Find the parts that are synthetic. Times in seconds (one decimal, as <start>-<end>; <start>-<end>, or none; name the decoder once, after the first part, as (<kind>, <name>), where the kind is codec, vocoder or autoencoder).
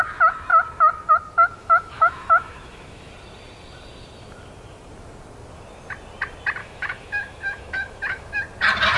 1.6-3.1 (autoencoder, DAC-VAE); 6.6-8.4